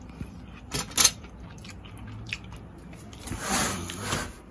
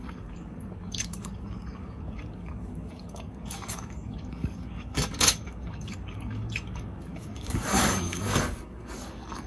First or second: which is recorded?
first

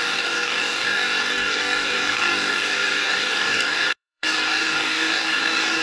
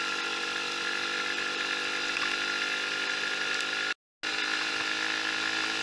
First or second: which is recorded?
second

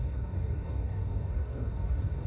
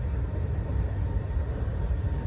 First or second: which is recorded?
second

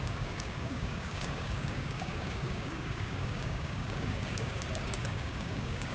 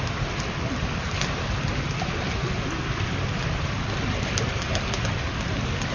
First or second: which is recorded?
second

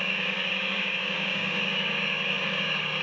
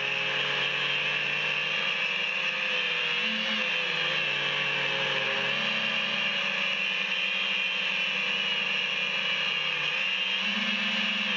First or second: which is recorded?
second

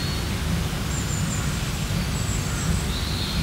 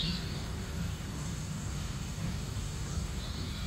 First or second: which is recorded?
first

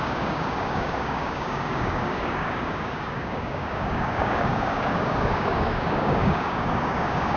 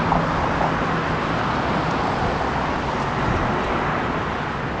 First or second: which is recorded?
second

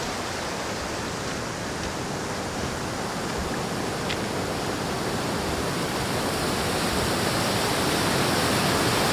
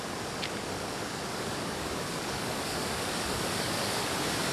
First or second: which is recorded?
first